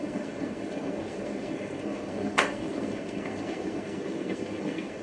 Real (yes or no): no